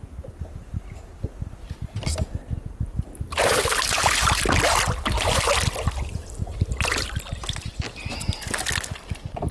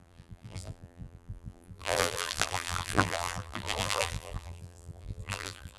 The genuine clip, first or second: first